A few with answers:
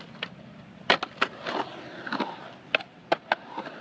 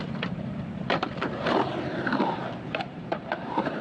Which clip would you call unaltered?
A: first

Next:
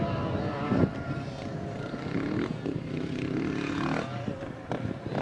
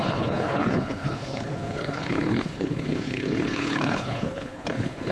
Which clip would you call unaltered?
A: first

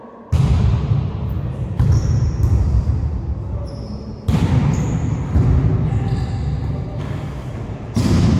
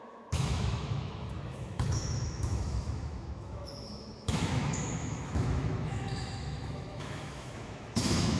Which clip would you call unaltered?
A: first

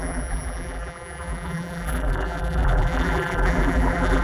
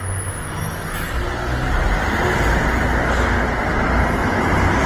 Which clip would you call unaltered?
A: second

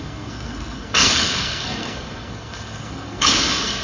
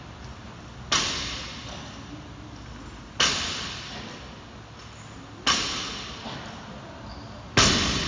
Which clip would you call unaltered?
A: second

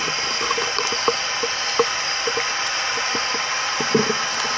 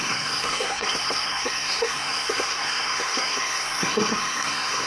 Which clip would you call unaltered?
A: first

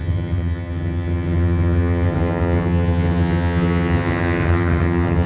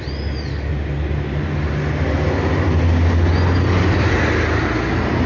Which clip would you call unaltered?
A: second